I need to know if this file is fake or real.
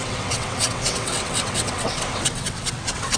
fake